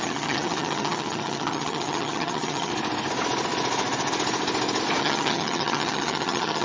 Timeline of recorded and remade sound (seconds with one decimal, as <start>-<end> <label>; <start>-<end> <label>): 0.0-2.7 remade; 2.7-5.0 recorded; 5.0-6.6 remade